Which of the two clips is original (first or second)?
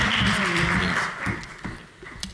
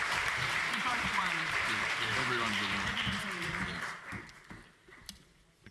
first